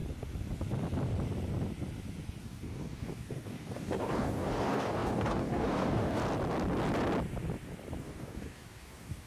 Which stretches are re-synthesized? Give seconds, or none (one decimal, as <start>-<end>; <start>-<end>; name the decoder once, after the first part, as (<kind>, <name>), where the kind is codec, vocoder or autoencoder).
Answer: 2.4-6.2 (codec, DAC); 8.0-9.3